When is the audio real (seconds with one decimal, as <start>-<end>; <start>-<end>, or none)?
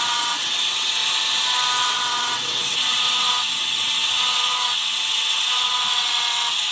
1.0-1.8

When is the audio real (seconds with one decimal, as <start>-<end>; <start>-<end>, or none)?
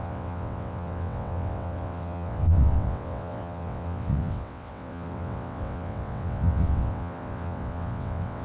none